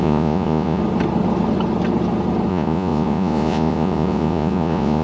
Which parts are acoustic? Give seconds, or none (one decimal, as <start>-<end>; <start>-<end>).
0.8-2.5

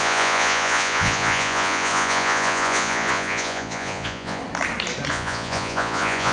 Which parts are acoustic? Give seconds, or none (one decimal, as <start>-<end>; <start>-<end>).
4.4-5.1

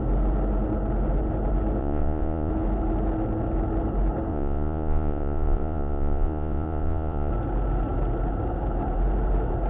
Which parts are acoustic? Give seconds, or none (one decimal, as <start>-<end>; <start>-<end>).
0.0-1.8; 2.5-4.3; 7.3-9.7

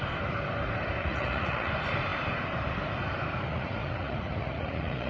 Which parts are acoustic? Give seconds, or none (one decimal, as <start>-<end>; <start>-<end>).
0.0-1.0; 1.7-3.5

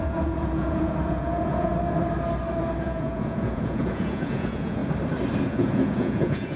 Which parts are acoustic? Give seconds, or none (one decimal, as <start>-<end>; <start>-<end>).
1.7-2.8; 4.8-5.4

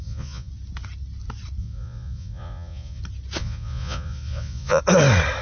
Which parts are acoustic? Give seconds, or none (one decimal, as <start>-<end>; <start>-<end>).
0.5-1.6; 3.0-3.4; 4.8-5.4